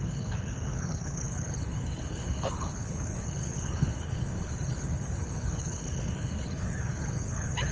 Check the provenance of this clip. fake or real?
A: fake